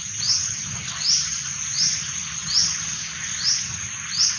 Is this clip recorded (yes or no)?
yes